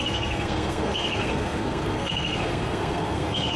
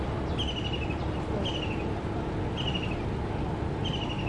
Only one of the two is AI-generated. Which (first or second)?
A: first